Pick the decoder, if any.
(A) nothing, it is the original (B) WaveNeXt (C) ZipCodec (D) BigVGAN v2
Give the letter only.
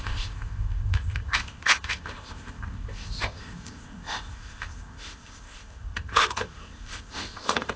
C